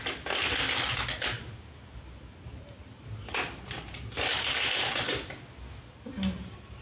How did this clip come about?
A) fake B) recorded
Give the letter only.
B